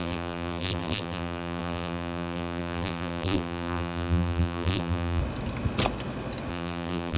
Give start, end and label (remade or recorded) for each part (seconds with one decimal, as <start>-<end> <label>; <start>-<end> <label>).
0.0-5.2 remade; 5.2-6.5 recorded; 6.5-7.2 remade